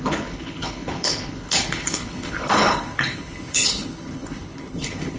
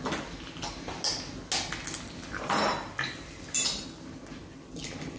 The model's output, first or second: first